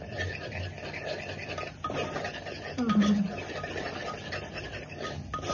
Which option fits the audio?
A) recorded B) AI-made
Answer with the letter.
A